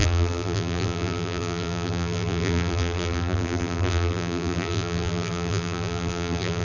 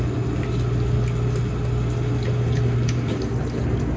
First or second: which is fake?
first